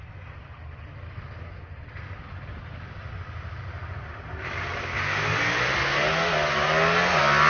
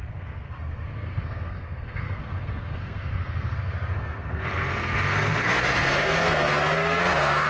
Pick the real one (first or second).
first